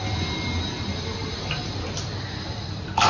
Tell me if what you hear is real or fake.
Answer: real